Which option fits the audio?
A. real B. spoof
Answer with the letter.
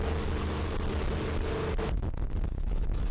A